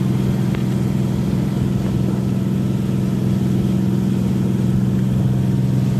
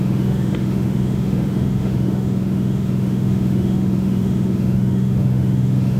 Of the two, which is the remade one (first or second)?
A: second